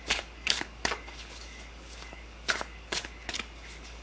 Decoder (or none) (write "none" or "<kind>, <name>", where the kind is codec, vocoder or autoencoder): codec, DAC